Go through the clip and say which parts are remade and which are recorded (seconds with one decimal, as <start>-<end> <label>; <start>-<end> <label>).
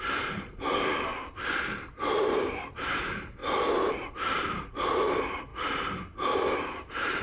0.0-3.4 remade; 3.4-4.7 recorded; 4.7-5.5 remade; 5.5-6.6 recorded; 6.6-7.2 remade